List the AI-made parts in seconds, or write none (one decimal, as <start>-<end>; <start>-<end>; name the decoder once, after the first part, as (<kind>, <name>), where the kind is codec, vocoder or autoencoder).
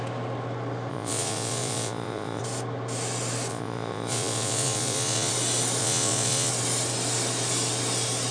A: 0.9-2.4 (vocoder, Vocos); 3.5-5.3; 5.8-6.5